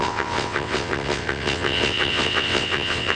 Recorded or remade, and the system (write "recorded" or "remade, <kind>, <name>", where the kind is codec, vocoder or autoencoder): remade, vocoder, WaveNeXt